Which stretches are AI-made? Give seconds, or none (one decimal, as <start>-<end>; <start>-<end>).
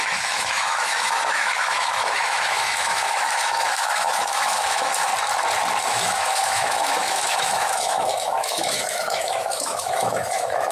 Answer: 0.0-5.1; 5.8-10.7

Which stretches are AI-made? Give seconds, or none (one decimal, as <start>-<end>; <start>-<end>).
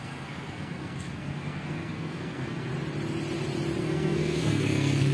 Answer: 0.0-2.7; 3.8-5.1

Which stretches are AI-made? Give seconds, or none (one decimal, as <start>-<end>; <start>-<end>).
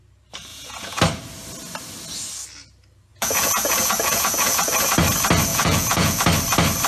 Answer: 0.5-1.0; 3.1-4.9; 5.5-6.2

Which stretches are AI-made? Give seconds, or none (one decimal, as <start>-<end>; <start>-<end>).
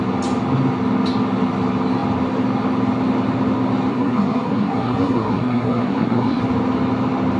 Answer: 3.9-6.4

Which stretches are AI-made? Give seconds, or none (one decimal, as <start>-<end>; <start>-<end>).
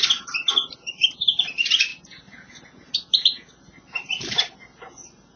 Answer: none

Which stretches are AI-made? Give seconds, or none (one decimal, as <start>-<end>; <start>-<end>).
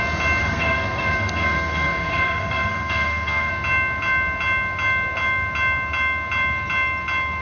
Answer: 0.4-3.5